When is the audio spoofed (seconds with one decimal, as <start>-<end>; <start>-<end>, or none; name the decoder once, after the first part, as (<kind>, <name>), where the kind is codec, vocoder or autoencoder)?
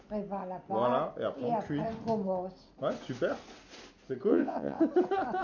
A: 4.3-4.8 (vocoder, WaveNeXt)